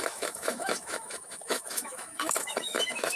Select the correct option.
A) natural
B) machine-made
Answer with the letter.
B